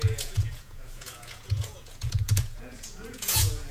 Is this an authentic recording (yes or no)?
no